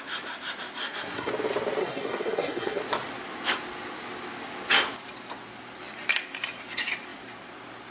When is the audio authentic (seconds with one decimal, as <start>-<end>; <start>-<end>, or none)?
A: 0.0-0.8; 1.3-1.8; 2.8-7.9